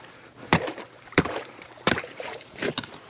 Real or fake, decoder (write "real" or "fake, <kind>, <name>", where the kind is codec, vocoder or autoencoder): fake, vocoder, BigVGAN v2